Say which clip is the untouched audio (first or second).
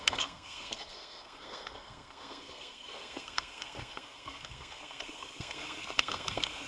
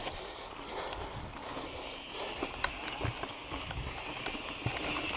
second